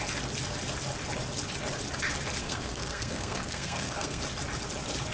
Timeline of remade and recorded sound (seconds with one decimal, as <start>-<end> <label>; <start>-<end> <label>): 0.0-2.4 recorded; 2.4-4.2 remade; 4.2-5.1 recorded